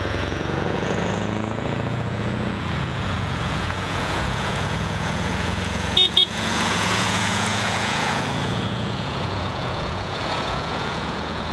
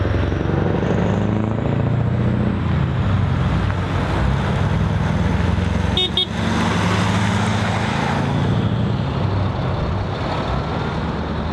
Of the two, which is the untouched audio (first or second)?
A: second